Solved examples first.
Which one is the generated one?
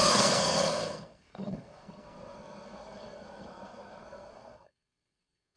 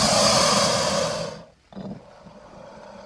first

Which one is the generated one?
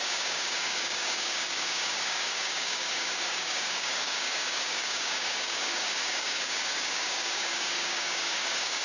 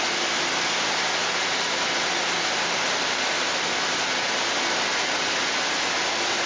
first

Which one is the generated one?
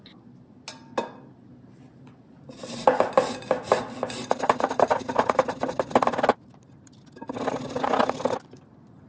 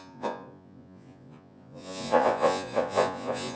second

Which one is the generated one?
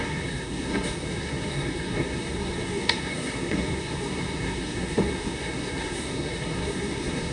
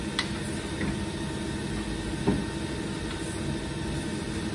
first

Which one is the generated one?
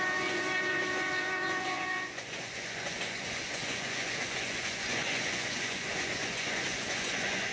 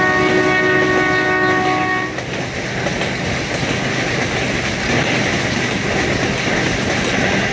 first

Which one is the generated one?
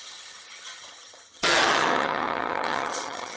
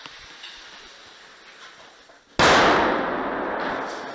first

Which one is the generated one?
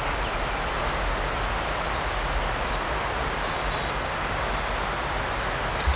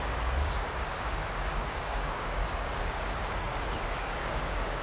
second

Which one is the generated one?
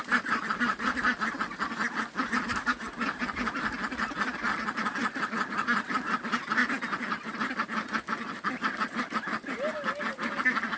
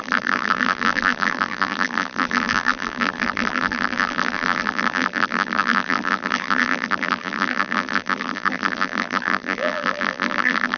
second